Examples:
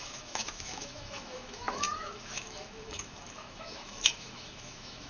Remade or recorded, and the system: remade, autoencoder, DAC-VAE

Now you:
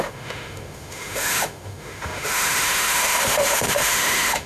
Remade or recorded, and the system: remade, autoencoder, DAC-VAE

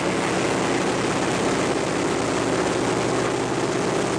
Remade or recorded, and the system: recorded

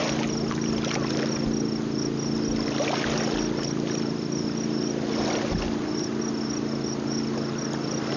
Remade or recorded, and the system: recorded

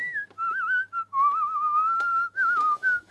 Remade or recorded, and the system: remade, autoencoder, DAC-VAE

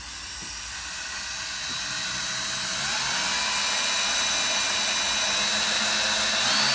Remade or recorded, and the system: recorded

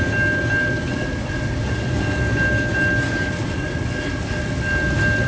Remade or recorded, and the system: recorded